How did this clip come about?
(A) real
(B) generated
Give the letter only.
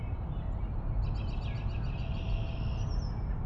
A